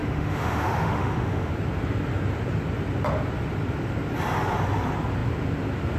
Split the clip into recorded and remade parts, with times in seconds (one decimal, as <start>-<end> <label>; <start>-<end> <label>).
0.0-1.5 remade; 1.5-6.0 recorded